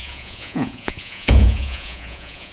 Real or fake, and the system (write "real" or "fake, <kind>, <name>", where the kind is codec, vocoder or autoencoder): fake, vocoder, Vocos